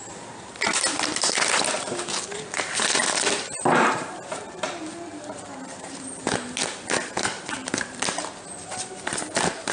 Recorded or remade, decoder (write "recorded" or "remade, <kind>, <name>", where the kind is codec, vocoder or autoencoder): remade, vocoder, BigVGAN v2